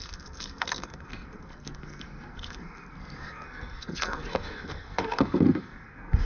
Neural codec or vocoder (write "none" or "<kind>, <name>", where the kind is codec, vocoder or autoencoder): codec, SNAC